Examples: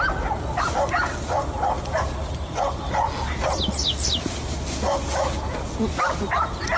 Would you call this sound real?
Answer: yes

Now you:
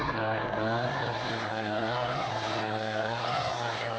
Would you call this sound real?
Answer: no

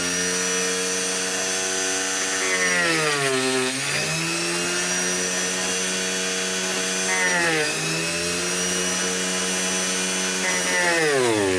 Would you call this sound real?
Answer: yes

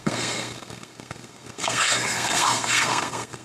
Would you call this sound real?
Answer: no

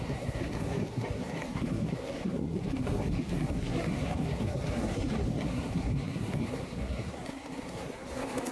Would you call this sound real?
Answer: no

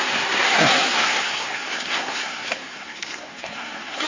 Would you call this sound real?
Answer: no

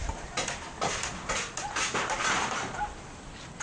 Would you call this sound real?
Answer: yes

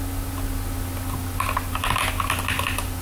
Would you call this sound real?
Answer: yes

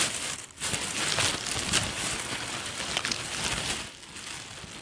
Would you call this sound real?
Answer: yes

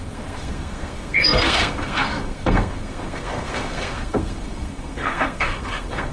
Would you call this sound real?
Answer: no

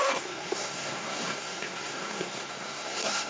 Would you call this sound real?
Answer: no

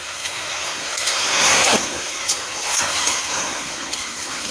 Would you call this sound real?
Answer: no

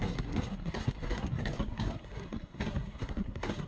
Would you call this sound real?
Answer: no